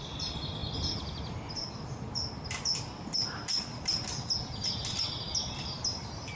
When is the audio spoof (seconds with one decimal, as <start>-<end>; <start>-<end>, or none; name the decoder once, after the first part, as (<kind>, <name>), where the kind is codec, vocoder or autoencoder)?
none